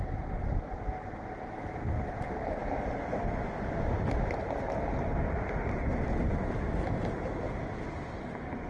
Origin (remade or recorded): recorded